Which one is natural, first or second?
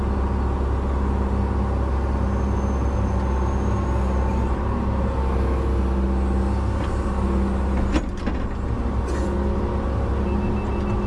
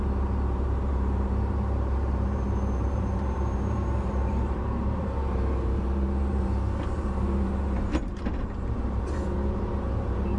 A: first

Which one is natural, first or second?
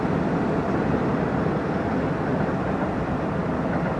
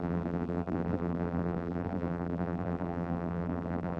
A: first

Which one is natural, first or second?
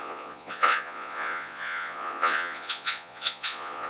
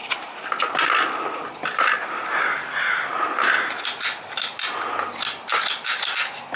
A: second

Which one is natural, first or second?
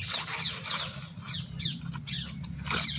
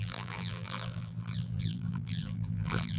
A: first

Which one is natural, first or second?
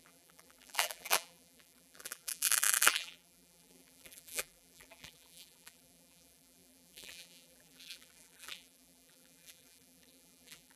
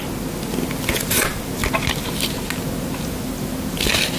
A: second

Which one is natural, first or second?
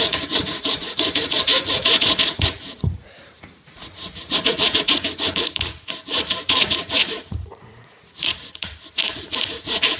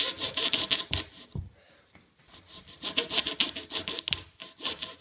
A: second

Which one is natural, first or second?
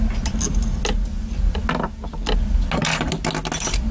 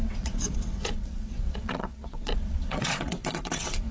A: first